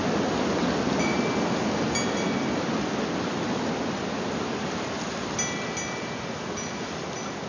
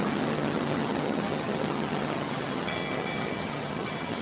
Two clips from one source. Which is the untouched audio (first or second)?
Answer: first